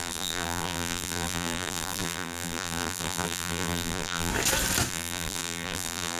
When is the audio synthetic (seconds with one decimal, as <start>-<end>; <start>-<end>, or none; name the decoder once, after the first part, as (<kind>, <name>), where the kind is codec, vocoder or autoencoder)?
0.0-4.3 (vocoder, BigVGAN v2); 4.9-6.2